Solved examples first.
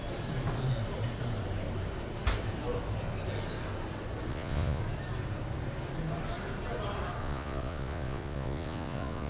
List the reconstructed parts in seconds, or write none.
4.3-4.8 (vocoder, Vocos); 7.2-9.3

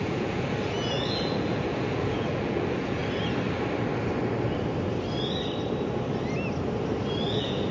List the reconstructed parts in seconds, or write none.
0.0-3.0 (vocoder, Vocos); 7.3-7.7

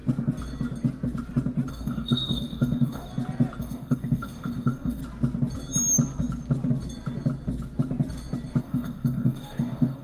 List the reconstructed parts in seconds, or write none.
1.7-3.1 (codec, DAC); 3.6-5.0; 8.6-10.0

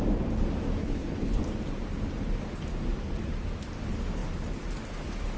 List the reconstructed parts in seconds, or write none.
0.8-1.4 (codec, HILCodec)

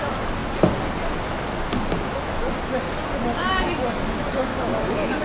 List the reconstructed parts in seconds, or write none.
4.4-5.2 (codec, DAC)

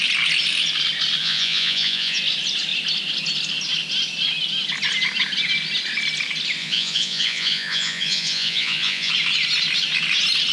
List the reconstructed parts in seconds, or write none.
1.2-2.2 (vocoder, Vocos); 6.6-9.1